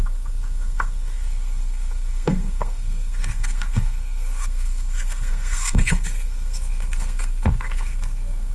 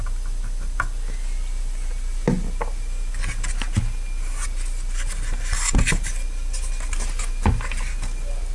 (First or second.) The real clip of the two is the second